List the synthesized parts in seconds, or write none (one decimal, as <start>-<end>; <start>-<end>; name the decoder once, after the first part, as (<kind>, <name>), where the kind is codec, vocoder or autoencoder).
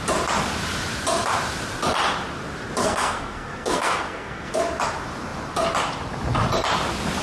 2.8-4.6 (codec, SNAC)